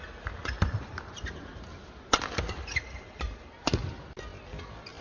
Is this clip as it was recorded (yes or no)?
yes